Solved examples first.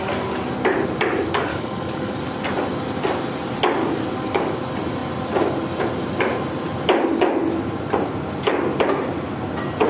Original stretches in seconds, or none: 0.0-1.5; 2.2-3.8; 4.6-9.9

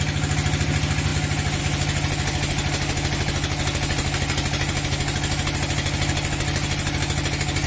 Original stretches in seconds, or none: 0.0-7.7

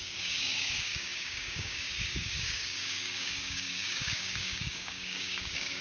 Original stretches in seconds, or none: none

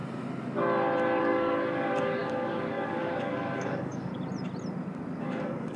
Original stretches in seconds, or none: 0.0-1.2; 4.1-5.2

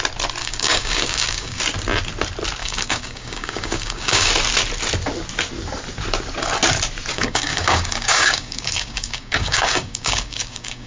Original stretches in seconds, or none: 0.0-0.4; 1.6-2.6; 4.3-7.1

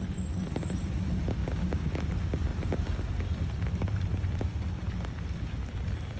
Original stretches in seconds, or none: 0.0-1.4; 1.9-6.2